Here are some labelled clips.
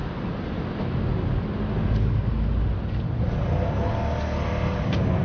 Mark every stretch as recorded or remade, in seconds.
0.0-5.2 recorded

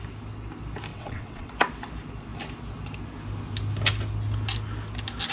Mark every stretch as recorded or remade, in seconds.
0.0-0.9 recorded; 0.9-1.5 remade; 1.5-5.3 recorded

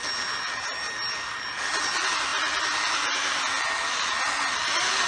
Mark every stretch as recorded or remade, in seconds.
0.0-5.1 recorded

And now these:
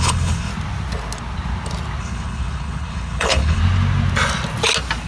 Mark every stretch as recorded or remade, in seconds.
0.0-0.5 remade; 0.5-2.0 recorded; 2.0-3.6 remade; 3.6-5.1 recorded

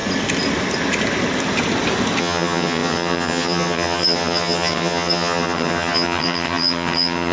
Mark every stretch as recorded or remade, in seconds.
0.0-2.2 recorded; 2.2-7.3 remade

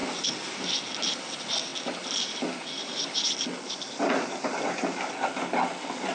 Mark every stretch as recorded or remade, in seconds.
0.0-6.1 recorded